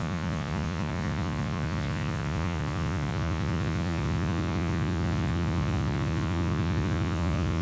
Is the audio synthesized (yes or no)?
yes